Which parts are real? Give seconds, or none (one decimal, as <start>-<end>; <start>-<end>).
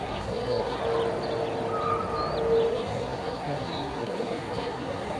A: 0.8-2.7